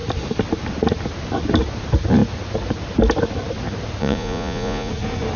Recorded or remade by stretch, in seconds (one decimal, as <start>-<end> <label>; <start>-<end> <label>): 0.0-4.0 recorded; 4.0-4.9 remade; 4.9-5.4 recorded